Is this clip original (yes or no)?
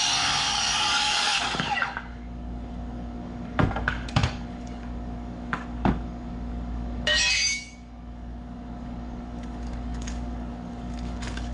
no